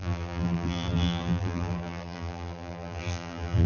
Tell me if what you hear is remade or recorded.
remade